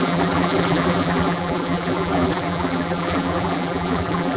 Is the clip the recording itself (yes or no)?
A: no